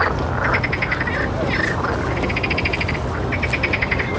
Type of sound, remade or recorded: recorded